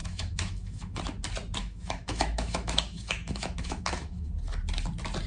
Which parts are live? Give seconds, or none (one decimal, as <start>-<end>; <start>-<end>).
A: 1.0-1.6; 4.3-5.3